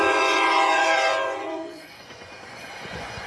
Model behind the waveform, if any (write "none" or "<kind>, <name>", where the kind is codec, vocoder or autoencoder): vocoder, Vocos